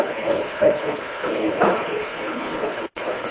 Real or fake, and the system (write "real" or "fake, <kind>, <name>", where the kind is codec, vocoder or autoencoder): fake, codec, HILCodec